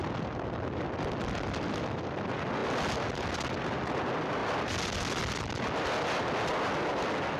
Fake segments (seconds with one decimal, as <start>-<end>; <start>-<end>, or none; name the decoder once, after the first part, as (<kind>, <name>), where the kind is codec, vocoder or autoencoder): none